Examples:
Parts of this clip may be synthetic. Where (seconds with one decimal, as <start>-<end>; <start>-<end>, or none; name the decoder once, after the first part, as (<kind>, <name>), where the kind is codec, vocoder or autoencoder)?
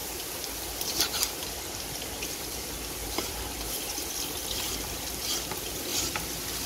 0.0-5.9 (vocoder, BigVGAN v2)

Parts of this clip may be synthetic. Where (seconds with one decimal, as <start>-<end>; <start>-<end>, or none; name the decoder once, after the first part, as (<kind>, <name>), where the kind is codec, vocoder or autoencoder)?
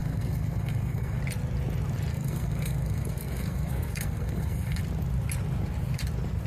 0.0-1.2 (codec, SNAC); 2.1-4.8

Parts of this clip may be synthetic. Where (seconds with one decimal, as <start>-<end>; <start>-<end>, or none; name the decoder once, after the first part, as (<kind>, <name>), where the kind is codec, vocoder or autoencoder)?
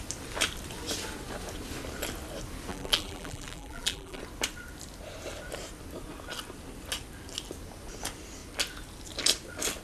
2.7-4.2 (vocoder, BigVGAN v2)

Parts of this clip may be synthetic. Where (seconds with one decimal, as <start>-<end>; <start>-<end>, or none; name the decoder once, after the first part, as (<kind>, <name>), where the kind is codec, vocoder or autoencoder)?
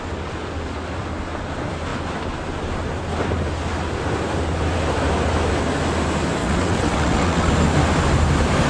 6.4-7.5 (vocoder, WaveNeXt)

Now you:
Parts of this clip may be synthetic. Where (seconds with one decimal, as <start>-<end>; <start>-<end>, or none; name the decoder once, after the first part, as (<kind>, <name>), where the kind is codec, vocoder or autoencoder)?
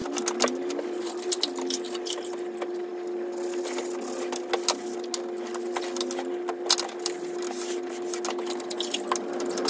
none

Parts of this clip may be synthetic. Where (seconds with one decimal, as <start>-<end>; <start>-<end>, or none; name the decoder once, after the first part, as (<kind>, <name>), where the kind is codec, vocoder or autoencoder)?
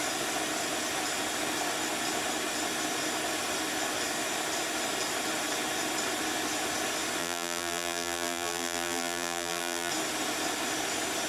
7.2-9.9 (vocoder, BigVGAN v2)